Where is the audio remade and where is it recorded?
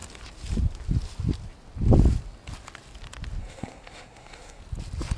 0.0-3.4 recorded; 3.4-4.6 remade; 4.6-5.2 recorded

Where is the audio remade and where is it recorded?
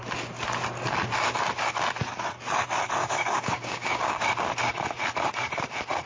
0.0-3.0 recorded; 3.0-4.2 remade; 4.2-6.1 recorded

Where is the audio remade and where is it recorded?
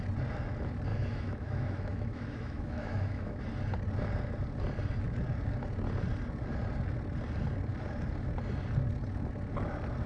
0.0-0.9 recorded; 0.9-3.4 remade; 3.4-10.1 recorded